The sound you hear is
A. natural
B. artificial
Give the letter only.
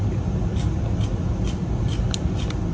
A